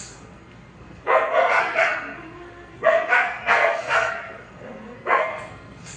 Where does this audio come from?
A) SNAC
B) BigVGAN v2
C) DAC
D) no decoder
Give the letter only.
A